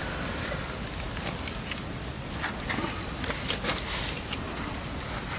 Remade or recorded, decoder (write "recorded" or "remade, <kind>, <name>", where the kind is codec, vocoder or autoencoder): recorded